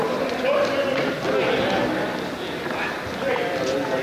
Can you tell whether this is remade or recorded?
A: recorded